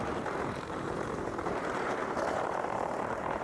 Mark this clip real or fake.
fake